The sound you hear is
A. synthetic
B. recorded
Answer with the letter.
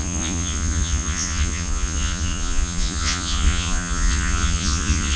A